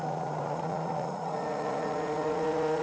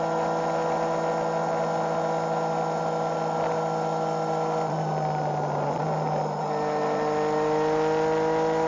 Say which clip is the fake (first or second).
first